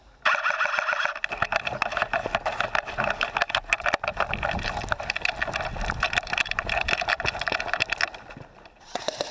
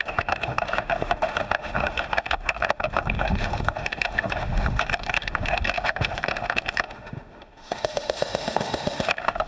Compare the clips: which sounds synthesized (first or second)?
second